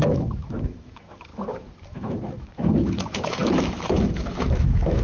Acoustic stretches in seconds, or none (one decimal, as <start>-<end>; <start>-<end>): none